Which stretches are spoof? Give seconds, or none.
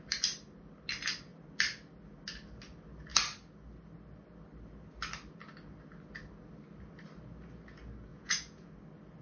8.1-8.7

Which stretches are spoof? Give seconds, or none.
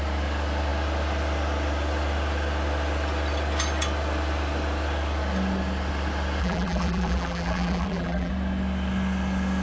6.4-8.3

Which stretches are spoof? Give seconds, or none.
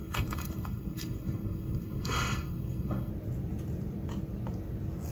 0.0-3.1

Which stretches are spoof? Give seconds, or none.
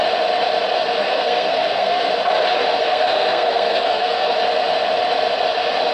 1.0-2.1; 2.8-4.3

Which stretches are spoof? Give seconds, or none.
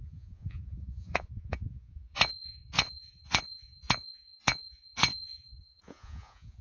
0.0-6.6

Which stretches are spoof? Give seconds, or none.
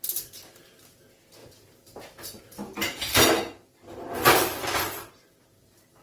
1.4-2.4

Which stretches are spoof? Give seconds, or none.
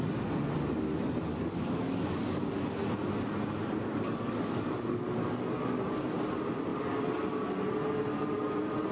1.3-2.6; 3.8-5.8